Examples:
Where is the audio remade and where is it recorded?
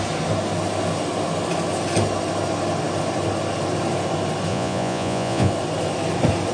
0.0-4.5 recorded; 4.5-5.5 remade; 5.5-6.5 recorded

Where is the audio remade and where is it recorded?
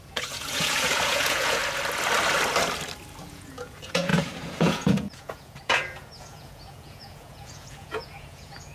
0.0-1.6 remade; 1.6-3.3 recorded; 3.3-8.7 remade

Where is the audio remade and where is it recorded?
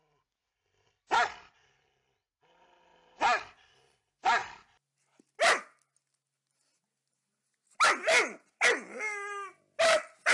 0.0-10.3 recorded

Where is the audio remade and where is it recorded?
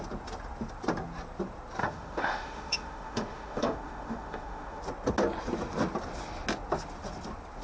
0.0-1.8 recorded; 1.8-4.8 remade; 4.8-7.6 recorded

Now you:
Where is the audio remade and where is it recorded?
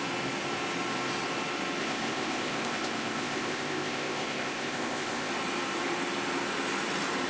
0.0-1.8 recorded; 1.8-5.3 remade; 5.3-7.3 recorded